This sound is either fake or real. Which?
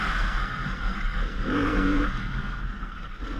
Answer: fake